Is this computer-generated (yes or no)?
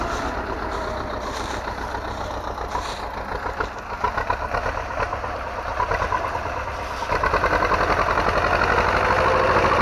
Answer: no